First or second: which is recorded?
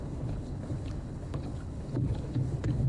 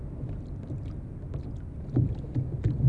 second